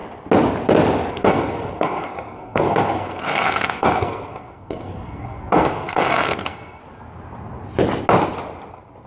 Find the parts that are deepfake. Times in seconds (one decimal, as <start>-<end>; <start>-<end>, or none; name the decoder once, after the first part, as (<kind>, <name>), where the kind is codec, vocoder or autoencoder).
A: 1.1-6.8 (codec, SNAC)